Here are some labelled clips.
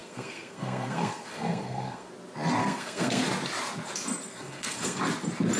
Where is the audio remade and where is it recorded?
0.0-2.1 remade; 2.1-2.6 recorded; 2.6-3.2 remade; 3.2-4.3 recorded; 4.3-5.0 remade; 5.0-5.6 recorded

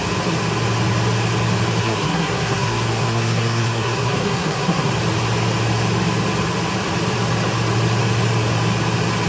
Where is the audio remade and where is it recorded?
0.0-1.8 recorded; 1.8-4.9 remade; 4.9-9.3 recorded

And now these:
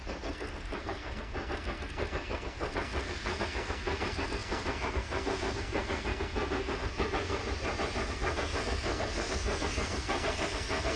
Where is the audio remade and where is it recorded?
0.0-7.4 remade; 7.4-8.1 recorded; 8.1-11.0 remade

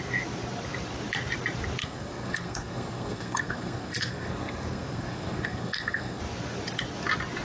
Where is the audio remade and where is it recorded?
0.0-1.8 recorded; 1.8-6.2 remade; 6.2-7.4 recorded